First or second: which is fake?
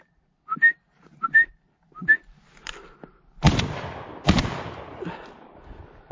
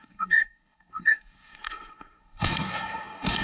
second